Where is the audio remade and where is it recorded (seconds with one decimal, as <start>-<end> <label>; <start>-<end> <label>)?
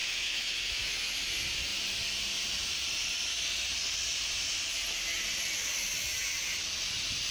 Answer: 0.0-1.1 remade; 1.1-7.3 recorded